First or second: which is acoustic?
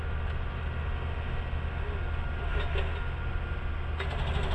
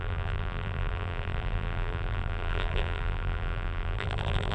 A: first